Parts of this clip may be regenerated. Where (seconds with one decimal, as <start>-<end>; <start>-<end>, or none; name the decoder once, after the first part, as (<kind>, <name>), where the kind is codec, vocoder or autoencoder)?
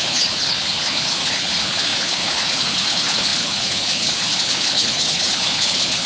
0.0-6.1 (codec, HILCodec)